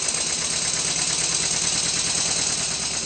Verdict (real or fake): real